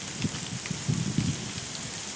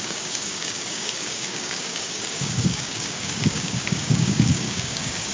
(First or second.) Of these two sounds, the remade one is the second